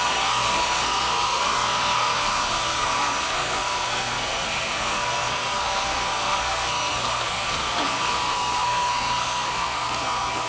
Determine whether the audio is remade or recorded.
remade